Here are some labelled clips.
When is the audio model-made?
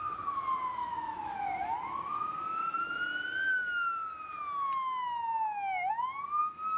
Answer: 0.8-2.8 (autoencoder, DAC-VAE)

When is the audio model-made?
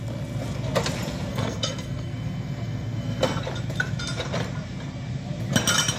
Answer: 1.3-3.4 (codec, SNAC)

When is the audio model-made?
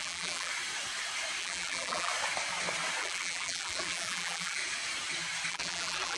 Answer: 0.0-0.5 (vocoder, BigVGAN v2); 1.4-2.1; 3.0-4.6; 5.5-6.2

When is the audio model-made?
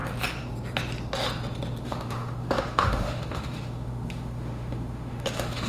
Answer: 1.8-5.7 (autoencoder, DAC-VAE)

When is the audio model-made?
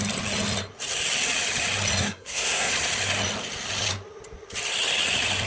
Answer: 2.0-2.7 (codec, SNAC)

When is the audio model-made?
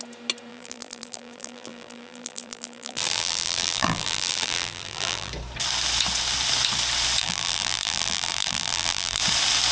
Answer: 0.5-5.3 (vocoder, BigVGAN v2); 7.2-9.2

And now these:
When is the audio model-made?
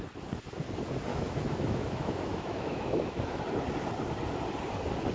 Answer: 1.1-3.4 (autoencoder, DAC-VAE)